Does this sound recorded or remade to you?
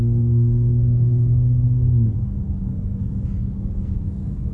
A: remade